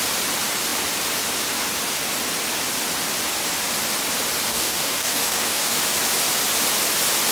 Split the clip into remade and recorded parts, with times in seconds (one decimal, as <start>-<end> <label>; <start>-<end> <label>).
0.0-4.5 recorded; 4.5-5.8 remade; 5.8-7.3 recorded